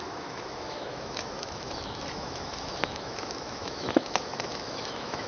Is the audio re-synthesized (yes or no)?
yes